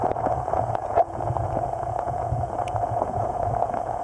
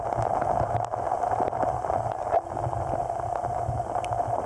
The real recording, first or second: second